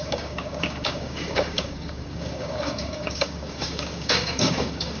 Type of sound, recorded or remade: remade